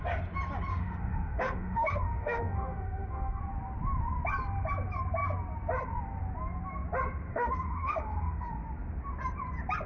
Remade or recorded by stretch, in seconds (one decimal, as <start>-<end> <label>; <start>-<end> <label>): 0.0-0.7 recorded; 0.7-3.4 remade; 3.4-7.3 recorded; 7.3-8.6 remade; 8.6-9.9 recorded